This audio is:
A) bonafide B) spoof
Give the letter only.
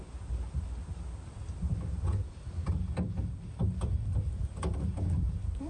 A